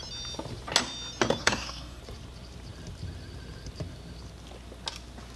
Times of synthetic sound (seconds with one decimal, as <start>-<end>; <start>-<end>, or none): 1.4-2.0